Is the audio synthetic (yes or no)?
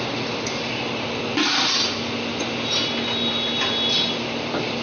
no